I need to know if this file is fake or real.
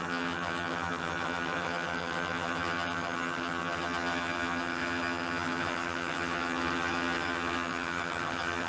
fake